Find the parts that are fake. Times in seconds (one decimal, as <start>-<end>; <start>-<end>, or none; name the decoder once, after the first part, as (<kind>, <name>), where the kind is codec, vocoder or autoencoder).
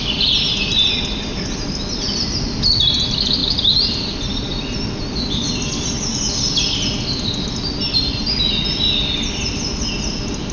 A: none